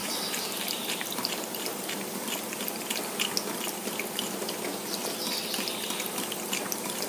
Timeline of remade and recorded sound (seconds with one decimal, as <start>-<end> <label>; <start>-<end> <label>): 0.0-2.3 remade; 2.3-7.1 recorded